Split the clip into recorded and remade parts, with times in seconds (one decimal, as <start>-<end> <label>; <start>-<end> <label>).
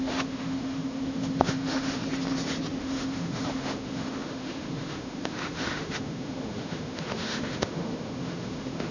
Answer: 0.0-2.0 remade; 2.0-2.8 recorded; 2.8-8.9 remade